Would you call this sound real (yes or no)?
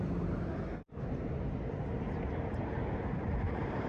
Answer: no